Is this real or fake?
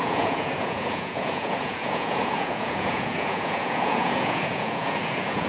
fake